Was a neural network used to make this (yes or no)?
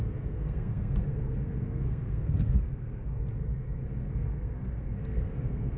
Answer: yes